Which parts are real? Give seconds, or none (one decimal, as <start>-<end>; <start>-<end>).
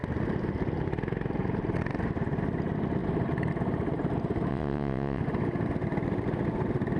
0.0-4.5; 5.2-7.0